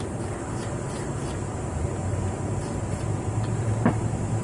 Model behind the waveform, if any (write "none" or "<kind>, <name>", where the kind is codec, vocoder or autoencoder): vocoder, BigVGAN v2